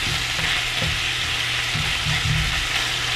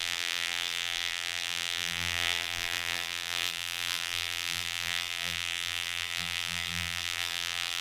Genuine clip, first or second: first